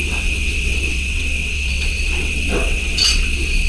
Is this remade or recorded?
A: remade